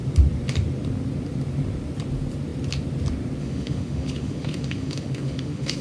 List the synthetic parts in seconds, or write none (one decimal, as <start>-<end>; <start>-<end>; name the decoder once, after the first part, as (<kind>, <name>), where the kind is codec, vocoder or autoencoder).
3.4-5.8 (autoencoder, DAC-VAE)